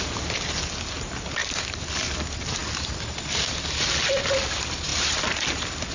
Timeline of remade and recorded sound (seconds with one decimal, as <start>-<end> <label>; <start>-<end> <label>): 0.0-5.9 recorded